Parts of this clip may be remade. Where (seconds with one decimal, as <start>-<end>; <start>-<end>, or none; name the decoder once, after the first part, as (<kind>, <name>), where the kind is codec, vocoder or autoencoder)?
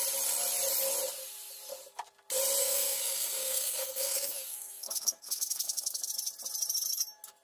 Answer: 2.6-6.1 (codec, SNAC)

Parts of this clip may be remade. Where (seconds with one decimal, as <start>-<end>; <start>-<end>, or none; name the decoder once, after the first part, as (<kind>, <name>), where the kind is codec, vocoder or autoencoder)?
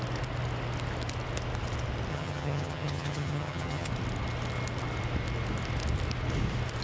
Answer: 2.1-3.9 (vocoder, HiFi-GAN)